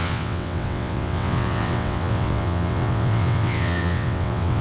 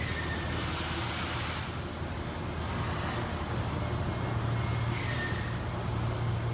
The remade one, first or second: first